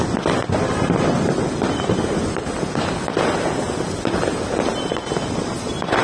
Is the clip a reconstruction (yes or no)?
no